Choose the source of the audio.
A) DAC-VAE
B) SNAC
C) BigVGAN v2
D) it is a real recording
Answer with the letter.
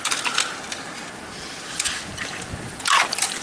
D